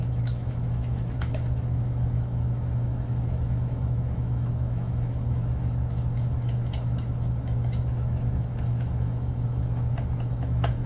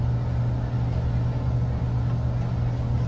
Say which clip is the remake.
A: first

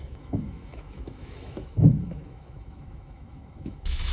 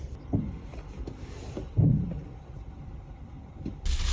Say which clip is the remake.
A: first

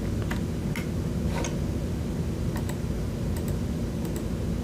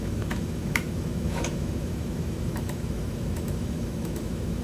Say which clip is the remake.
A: second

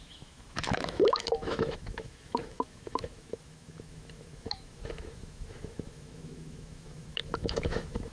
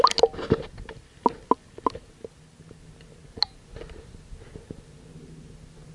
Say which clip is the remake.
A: first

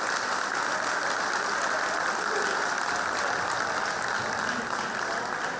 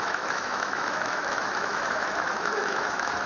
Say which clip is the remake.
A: second